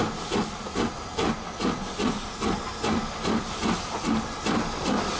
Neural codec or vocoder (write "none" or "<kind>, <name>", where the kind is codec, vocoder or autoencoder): none